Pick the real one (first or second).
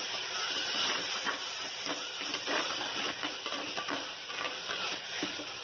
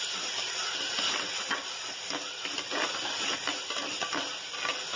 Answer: second